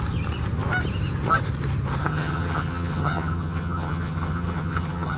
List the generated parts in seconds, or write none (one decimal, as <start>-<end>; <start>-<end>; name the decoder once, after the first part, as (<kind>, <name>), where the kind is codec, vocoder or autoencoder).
2.0-5.2 (vocoder, HiFi-GAN)